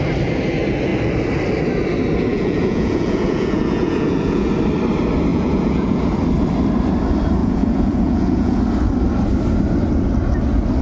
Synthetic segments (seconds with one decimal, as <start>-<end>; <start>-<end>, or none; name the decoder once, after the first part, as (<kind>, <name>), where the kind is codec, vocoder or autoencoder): 2.3-4.5 (vocoder, Vocos); 5.3-6.0; 7.4-8.6